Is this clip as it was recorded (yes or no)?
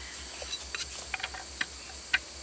yes